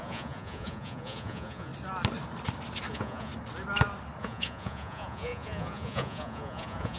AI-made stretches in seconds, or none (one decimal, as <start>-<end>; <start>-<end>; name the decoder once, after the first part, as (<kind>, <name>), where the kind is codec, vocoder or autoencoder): 0.0-1.7 (vocoder, Vocos); 2.9-3.3; 4.2-7.0